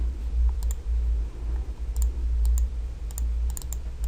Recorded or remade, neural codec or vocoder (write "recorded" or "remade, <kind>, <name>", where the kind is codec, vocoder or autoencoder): recorded